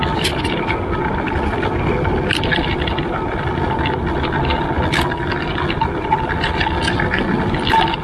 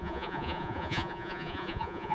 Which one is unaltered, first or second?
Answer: first